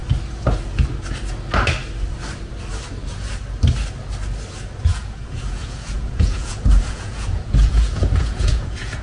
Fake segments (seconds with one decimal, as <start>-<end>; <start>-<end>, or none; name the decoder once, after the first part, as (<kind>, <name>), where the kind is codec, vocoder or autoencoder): 4.9-9.0 (vocoder, Vocos)